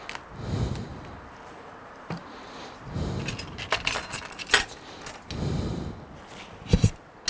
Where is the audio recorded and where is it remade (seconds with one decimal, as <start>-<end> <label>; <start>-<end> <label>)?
0.0-0.9 recorded; 0.9-2.2 remade; 2.2-7.3 recorded